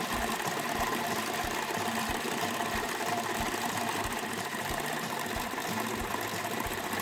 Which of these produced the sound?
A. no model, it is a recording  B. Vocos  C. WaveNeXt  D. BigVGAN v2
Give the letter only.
D